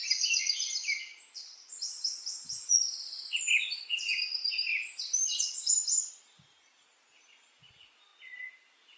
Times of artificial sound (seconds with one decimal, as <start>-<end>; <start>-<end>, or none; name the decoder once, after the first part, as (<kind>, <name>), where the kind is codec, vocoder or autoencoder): 0.0-1.1 (vocoder, BigVGAN v2); 4.1-8.1

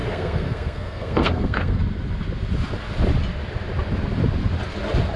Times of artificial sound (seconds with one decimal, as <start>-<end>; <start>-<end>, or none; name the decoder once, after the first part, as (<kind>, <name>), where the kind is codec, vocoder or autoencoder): 0.0-1.8 (codec, SNAC)

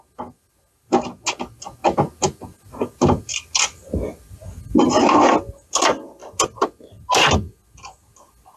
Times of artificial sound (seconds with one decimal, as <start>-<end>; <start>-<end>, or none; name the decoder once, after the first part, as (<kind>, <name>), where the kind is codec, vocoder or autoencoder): none

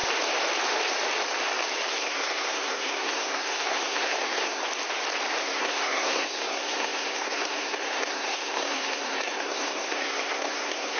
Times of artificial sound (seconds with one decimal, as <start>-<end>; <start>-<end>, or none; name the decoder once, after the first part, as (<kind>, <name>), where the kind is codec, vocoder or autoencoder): 1.9-4.6 (codec, SNAC); 5.4-11.0

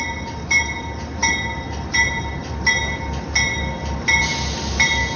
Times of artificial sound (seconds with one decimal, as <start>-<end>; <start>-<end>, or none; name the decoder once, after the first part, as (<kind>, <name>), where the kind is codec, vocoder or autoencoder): none

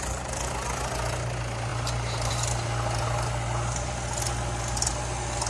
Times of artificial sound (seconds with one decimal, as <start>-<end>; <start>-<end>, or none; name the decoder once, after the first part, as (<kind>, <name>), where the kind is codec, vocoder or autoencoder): none